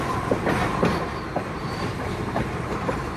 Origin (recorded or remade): remade